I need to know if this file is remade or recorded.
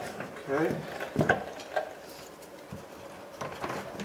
recorded